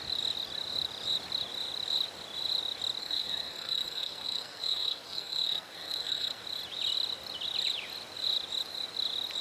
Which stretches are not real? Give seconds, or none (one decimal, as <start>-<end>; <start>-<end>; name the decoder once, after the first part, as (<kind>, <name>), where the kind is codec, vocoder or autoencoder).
3.0-6.4 (codec, SNAC)